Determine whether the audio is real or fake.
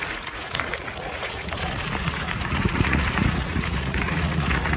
fake